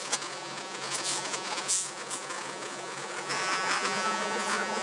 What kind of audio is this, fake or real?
fake